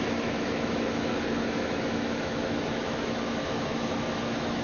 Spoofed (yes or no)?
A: yes